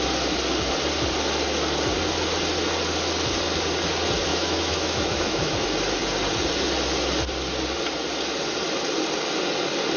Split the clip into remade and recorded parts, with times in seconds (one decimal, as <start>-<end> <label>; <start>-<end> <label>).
0.0-4.3 recorded; 4.3-5.6 remade; 5.6-10.0 recorded